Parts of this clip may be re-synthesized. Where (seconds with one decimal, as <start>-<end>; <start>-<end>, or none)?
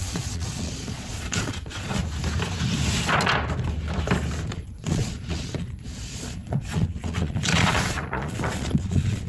0.0-2.0; 4.5-9.3